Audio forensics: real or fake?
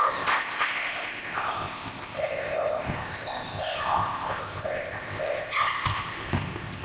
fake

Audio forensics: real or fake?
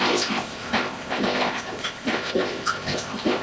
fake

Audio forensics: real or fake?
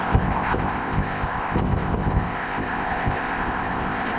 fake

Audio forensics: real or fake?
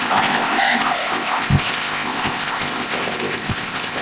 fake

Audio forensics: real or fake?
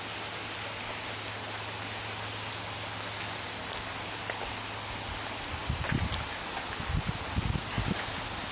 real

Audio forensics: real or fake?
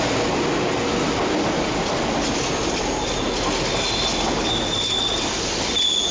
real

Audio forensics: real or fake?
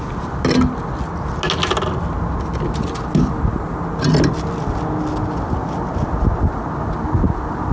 real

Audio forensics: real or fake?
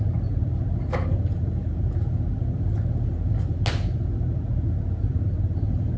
real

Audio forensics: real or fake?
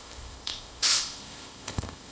fake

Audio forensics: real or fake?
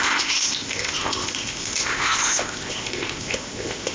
fake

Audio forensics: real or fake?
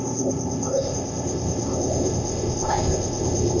fake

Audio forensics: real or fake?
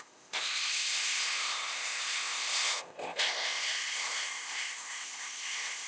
fake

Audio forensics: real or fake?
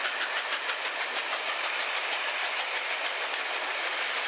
real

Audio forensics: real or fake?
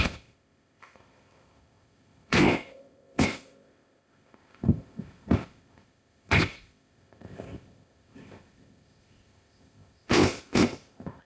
fake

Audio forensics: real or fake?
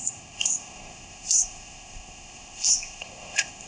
fake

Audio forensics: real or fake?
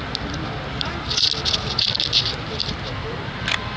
real